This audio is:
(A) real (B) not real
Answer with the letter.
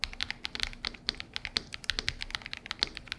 A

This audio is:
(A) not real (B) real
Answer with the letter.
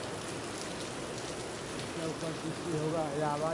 B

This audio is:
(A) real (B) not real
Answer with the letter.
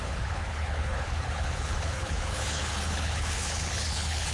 B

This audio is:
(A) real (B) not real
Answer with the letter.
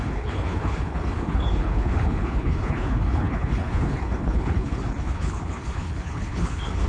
B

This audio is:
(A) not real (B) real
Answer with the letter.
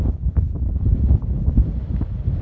B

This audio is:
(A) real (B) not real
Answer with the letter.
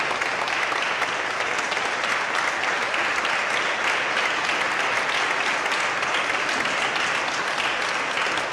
A